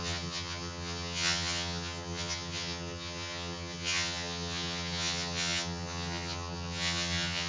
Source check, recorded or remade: remade